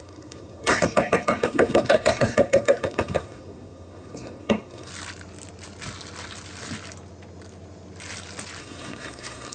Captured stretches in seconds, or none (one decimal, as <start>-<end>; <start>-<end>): 4.9-8.6